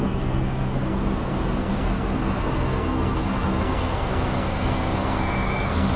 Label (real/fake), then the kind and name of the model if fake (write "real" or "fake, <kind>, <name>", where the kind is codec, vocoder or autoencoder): fake, codec, SNAC